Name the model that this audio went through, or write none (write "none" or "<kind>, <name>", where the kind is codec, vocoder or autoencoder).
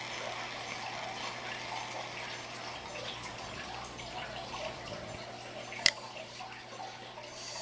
none